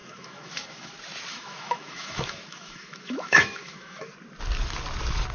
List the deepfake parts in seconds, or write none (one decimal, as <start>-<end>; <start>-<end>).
0.0-0.9; 1.3-4.1